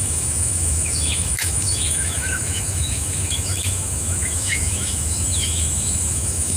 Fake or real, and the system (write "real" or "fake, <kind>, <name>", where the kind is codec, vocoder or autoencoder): fake, autoencoder, DAC-VAE